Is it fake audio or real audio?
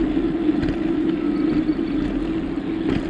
real